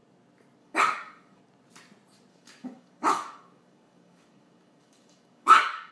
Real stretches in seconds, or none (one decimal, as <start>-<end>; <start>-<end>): 0.0-0.6; 1.4-2.3